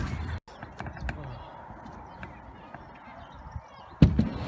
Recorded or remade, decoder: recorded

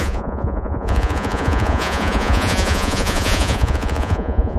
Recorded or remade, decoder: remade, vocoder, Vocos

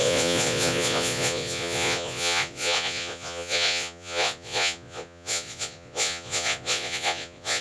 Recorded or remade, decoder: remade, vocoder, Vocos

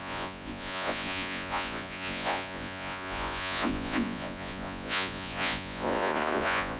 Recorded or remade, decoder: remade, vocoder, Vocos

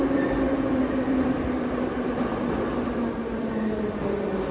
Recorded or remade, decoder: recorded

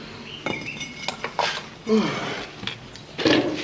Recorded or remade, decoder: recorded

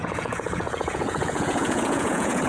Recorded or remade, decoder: remade, vocoder, Vocos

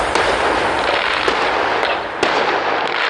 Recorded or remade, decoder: recorded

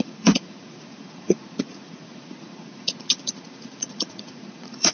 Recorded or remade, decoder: remade, vocoder, Vocos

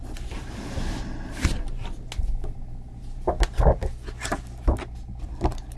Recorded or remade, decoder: recorded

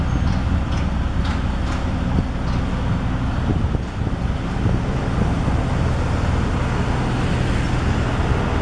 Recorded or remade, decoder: recorded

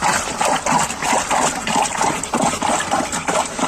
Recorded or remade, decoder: recorded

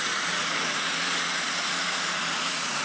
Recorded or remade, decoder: remade, vocoder, Vocos